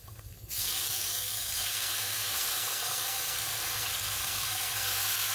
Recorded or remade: remade